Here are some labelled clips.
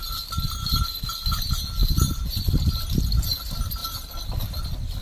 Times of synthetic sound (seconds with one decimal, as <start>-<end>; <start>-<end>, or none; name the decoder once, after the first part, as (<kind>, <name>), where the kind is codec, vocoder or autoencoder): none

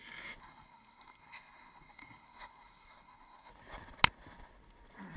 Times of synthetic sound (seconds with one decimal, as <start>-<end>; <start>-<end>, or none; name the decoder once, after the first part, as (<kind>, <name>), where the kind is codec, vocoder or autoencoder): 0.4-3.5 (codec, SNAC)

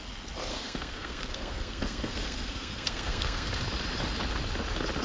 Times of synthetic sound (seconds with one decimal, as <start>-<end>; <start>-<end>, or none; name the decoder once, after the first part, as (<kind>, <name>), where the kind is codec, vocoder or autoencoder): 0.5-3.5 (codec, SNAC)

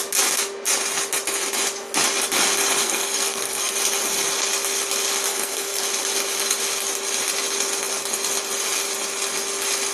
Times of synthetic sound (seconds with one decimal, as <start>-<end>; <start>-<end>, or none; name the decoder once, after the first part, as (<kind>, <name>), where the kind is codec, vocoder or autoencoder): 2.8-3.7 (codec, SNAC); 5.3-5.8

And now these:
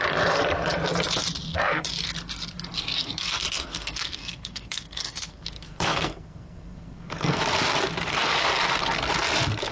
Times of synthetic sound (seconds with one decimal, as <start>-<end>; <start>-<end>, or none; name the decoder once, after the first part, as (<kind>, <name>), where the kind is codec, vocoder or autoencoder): 1.5-2.1 (codec, SNAC); 3.0-7.4

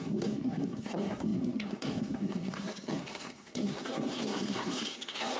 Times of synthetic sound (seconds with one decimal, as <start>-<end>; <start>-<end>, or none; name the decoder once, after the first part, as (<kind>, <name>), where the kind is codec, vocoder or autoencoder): 0.0-5.4 (codec, SNAC)

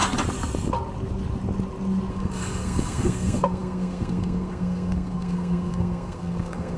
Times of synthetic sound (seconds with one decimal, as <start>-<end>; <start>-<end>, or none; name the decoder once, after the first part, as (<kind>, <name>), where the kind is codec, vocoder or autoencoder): 2.1-6.8 (codec, SNAC)